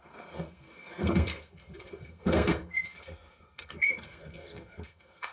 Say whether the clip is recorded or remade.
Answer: remade